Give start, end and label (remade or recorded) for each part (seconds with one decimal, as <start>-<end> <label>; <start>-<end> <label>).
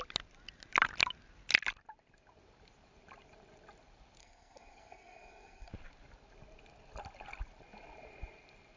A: 0.0-4.2 recorded; 4.2-5.7 remade; 5.7-8.8 recorded